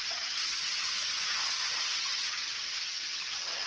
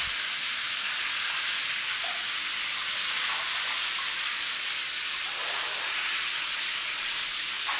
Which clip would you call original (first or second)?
second